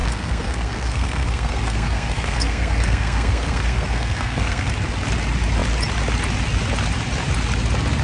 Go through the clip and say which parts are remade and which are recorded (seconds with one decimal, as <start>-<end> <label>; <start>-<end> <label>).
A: 0.0-4.7 remade; 4.7-8.0 recorded